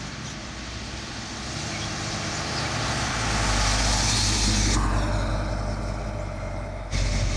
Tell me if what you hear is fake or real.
real